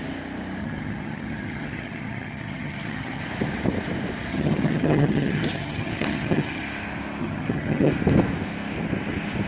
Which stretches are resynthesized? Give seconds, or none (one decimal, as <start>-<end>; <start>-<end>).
0.6-3.2; 4.3-6.6; 7.2-7.9